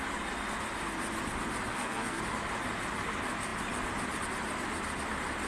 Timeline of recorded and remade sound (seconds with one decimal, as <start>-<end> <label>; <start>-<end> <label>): 0.0-1.7 recorded; 1.7-2.2 remade; 2.2-5.5 recorded